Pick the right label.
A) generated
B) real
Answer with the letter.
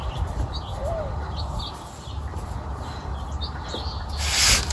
B